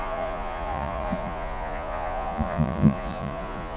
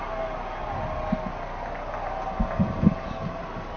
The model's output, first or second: first